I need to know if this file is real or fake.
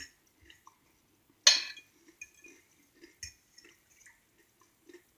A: real